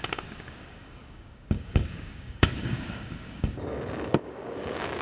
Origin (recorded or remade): remade